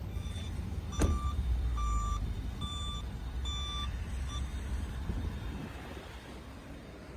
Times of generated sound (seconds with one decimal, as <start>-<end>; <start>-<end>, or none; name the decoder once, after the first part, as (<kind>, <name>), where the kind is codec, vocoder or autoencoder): 0.0-1.7 (vocoder, BigVGAN v2); 4.6-5.6; 6.1-7.2